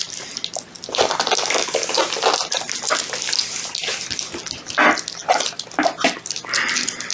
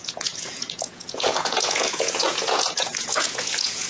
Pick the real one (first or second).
first